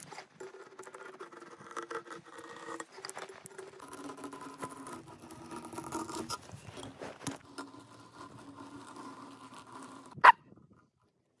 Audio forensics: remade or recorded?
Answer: recorded